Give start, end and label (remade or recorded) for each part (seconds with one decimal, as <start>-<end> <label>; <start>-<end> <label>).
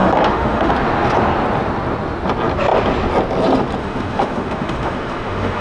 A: 0.0-0.7 remade; 0.7-3.8 recorded; 3.8-5.6 remade